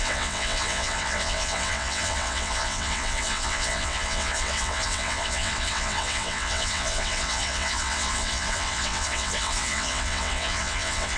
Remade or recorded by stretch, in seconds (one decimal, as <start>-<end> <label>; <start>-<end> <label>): 0.0-11.2 remade